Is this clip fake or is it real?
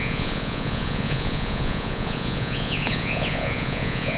fake